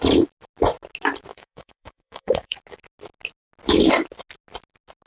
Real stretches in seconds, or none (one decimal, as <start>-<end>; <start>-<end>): 0.0-1.3; 2.6-5.1